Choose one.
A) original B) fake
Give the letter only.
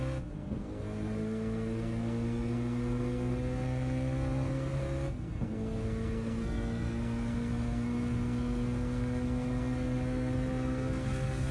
B